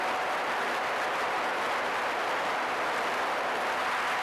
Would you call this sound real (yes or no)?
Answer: yes